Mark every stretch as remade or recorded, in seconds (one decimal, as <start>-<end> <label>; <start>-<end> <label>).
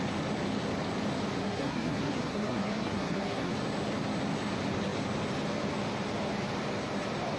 0.0-1.4 recorded; 1.4-3.5 remade; 3.5-7.4 recorded